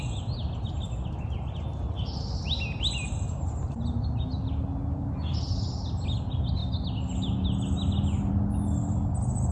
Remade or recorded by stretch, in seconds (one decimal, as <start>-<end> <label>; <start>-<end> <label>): 0.0-9.5 recorded